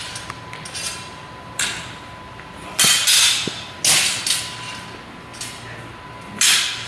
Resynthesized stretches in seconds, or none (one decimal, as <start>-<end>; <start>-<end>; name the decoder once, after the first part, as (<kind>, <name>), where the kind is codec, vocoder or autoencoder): none